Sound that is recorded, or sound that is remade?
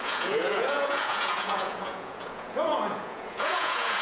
remade